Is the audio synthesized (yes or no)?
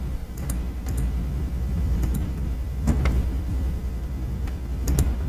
no